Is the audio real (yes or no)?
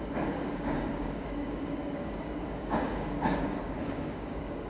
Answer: no